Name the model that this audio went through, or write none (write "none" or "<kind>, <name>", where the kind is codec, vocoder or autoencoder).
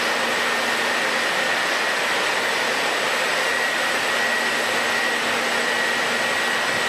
none